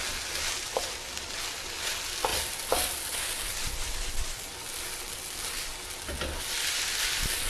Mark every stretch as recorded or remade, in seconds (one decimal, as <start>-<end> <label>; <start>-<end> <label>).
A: 0.0-7.5 recorded